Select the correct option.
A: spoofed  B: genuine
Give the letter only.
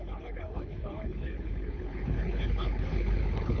A